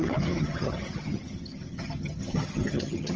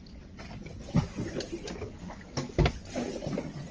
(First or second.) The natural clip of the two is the second